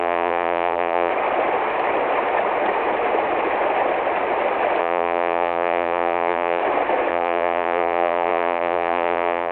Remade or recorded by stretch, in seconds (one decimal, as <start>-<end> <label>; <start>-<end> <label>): 0.0-1.1 remade; 1.1-4.8 recorded; 4.8-6.6 remade; 6.6-7.1 recorded; 7.1-9.5 remade